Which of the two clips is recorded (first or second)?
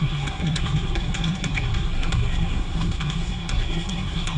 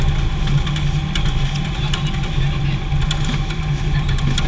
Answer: second